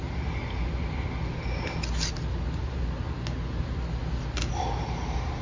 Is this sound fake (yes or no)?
no